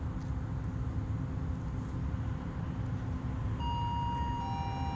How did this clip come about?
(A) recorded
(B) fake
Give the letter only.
A